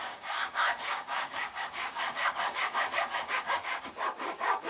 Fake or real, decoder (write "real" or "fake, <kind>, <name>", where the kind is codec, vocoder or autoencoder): fake, codec, DAC